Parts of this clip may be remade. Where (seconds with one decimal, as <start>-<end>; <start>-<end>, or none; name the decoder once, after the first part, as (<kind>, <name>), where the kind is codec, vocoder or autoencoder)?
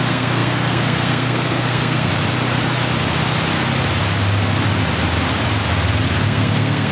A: 0.0-2.1 (codec, SNAC); 6.2-6.9